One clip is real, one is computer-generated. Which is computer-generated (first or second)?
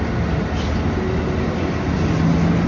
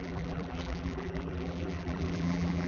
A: second